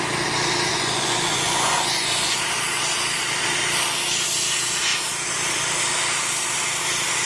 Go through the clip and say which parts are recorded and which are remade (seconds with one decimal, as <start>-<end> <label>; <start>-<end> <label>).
0.0-0.7 recorded; 0.7-2.4 remade; 2.4-7.3 recorded